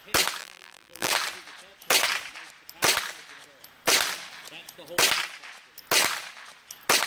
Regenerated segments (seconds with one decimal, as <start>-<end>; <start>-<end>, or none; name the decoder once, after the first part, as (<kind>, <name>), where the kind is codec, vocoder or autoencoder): 0.4-1.1 (vocoder, BigVGAN v2)